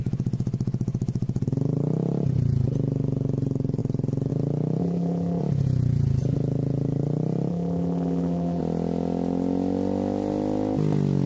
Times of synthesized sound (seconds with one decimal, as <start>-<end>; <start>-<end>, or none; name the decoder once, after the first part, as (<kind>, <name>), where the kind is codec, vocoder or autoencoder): 4.8-5.4 (vocoder, BigVGAN v2); 7.5-8.6